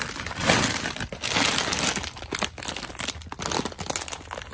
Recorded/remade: recorded